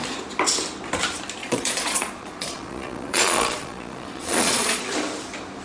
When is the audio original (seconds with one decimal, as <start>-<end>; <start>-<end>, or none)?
0.0-1.4; 4.8-5.6